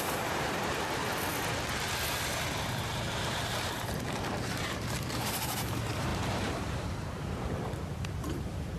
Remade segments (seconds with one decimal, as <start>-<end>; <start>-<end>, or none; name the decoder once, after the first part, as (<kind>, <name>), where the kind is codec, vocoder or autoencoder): 0.0-1.0 (vocoder, BigVGAN v2); 2.7-8.8